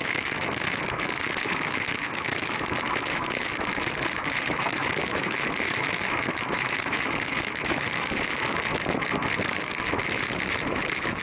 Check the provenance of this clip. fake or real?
fake